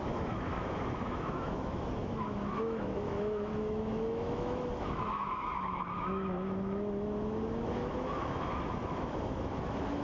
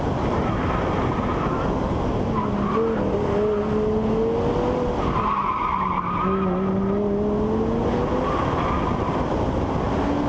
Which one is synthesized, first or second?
first